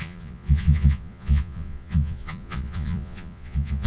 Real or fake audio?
fake